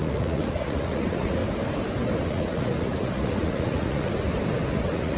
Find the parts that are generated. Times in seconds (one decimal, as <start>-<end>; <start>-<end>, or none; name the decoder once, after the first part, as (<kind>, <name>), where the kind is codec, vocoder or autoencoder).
0.0-1.4 (vocoder, Vocos); 2.2-4.1; 4.7-5.2